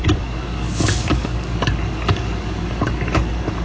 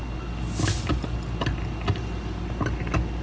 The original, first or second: second